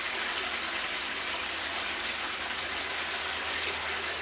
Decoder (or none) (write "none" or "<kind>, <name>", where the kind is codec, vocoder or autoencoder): none